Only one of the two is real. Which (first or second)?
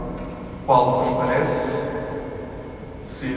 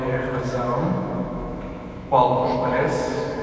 first